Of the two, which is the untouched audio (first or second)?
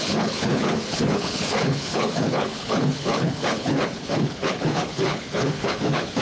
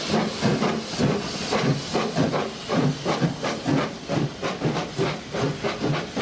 second